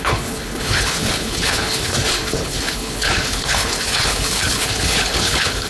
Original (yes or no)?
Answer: no